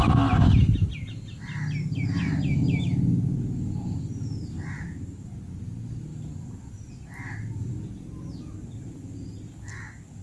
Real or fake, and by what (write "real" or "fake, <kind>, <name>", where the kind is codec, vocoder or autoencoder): real